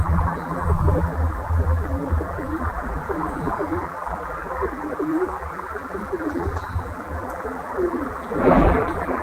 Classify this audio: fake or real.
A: fake